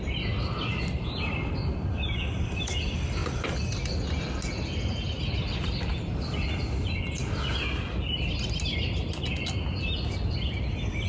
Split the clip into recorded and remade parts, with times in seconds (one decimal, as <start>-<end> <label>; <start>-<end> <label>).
0.0-11.1 recorded